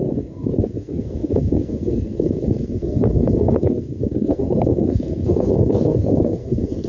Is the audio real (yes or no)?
no